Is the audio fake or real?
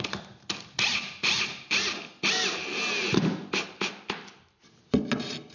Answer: real